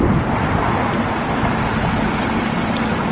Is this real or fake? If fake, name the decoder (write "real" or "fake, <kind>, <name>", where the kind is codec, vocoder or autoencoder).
real